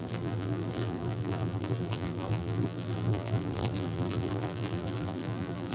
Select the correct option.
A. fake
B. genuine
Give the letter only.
A